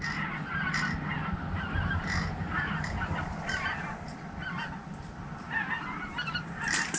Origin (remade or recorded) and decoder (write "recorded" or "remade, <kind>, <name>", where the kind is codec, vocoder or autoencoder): recorded